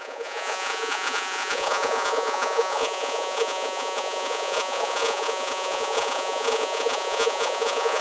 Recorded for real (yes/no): no